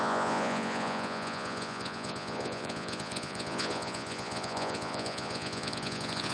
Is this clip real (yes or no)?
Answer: no